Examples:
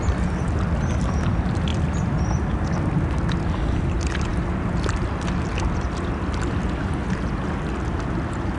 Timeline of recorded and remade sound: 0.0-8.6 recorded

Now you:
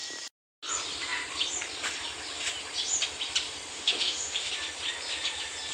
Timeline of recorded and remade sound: 0.0-3.7 recorded; 3.7-4.5 remade; 4.5-5.7 recorded

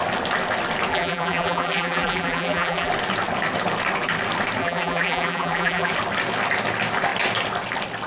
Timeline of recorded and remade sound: 0.0-0.9 recorded; 0.9-2.9 remade; 2.9-4.6 recorded; 4.6-5.9 remade; 5.9-8.1 recorded

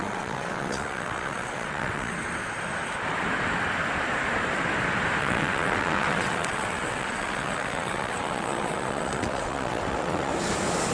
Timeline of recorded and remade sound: 0.0-2.1 remade; 2.1-5.2 recorded; 5.2-10.3 remade; 10.3-10.9 recorded